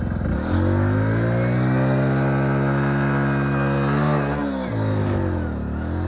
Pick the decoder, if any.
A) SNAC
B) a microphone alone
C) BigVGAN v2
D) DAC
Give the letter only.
B